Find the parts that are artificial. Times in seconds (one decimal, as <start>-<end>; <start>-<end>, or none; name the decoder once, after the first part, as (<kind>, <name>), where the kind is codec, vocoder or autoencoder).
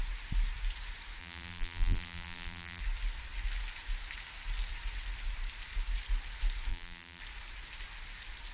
1.2-2.8 (vocoder, BigVGAN v2); 6.7-7.2